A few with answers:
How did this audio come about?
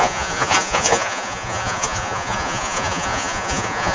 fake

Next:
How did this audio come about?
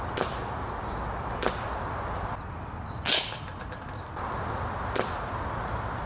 real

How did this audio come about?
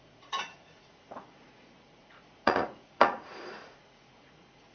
fake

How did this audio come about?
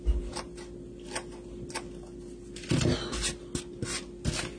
real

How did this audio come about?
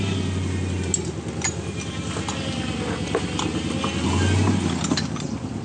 real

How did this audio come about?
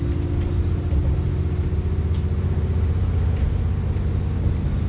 real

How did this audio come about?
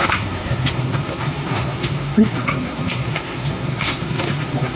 fake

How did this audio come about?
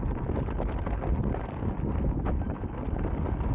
real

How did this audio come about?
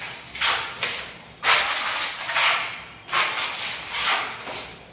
real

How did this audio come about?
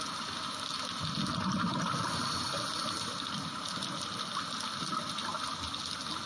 real